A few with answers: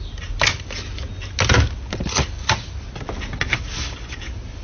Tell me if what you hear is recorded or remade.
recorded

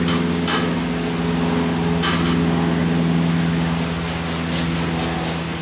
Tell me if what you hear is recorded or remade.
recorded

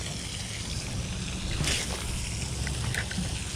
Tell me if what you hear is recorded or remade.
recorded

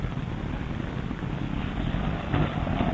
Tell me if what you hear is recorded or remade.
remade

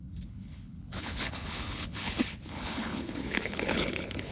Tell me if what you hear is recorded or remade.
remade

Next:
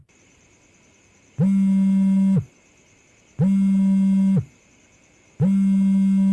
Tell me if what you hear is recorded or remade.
recorded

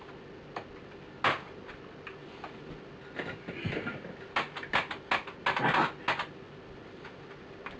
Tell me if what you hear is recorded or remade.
recorded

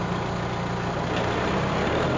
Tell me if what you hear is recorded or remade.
recorded